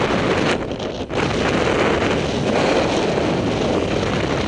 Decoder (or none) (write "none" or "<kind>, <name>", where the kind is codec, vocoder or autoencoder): none